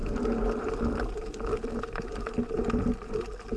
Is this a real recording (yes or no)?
yes